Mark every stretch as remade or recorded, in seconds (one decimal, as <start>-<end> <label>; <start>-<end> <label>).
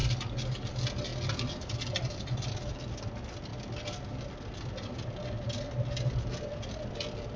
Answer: 0.0-7.4 recorded